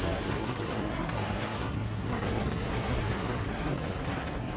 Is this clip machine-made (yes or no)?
yes